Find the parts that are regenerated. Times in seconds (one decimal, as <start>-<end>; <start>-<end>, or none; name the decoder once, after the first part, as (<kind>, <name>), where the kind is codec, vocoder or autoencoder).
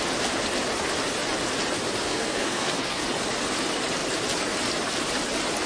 2.0-3.0 (codec, SNAC)